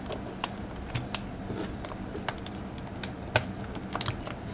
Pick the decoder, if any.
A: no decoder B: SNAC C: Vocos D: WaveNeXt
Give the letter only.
A